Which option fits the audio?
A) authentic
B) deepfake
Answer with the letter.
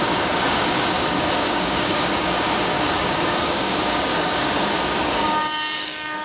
B